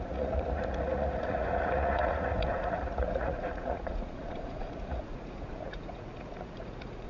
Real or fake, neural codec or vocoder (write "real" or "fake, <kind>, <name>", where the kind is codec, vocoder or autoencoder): fake, vocoder, Vocos